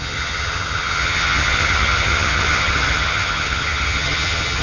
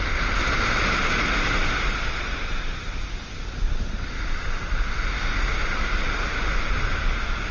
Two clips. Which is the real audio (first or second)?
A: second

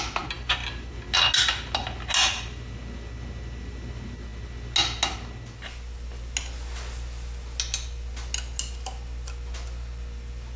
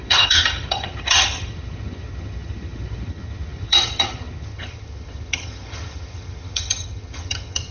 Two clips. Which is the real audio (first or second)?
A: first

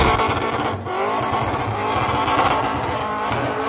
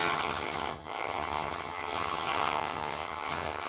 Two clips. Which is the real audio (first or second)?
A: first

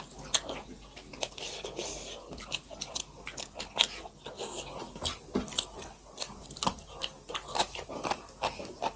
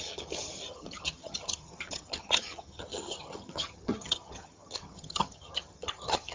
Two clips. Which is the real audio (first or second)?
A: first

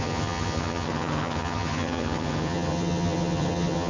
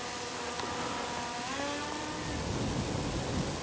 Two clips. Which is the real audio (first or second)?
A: second